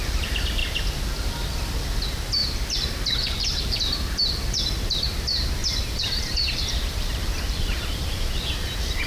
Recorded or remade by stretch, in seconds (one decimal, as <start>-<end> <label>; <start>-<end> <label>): 0.0-5.6 recorded; 5.6-8.5 remade; 8.5-9.1 recorded